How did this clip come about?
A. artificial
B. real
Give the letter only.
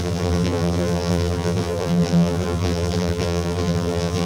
A